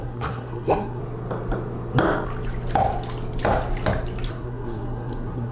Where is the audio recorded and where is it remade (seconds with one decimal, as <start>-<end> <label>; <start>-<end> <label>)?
0.0-1.0 remade; 1.0-4.3 recorded; 4.3-5.5 remade